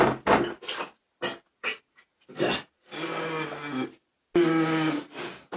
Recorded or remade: recorded